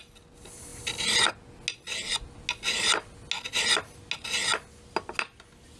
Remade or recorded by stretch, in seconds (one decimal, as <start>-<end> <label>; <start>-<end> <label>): 0.0-5.8 recorded